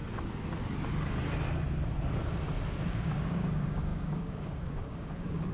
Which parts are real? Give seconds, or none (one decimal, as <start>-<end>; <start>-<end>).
0.0-2.9